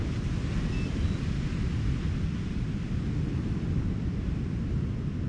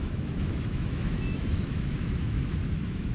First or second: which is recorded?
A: first